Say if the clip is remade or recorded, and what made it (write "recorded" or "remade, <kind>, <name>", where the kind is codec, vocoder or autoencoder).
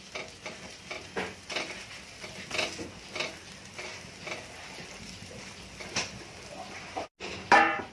recorded